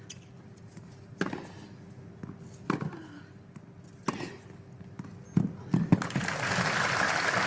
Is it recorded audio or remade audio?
recorded